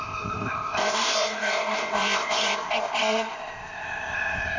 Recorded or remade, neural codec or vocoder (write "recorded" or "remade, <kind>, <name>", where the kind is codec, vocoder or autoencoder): remade, codec, ZipCodec